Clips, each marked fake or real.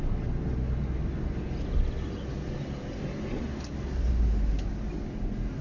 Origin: real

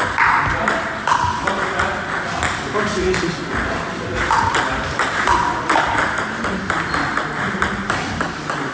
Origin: real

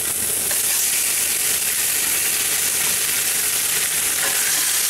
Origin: real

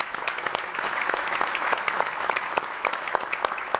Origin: fake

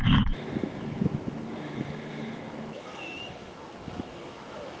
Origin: fake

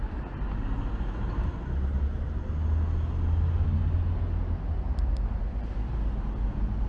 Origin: real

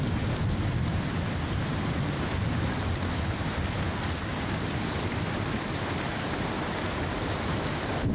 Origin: real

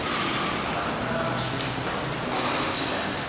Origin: real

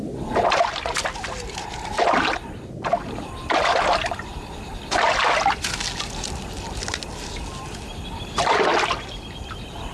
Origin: real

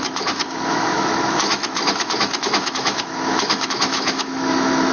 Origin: fake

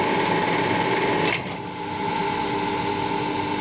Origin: real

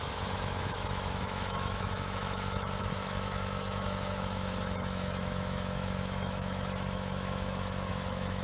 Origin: fake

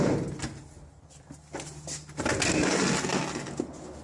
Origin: real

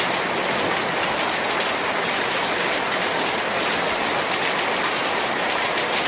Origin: real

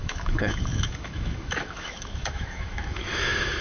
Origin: fake